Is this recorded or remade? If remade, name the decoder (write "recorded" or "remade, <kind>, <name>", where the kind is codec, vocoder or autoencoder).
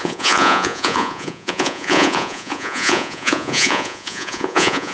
remade, vocoder, Vocos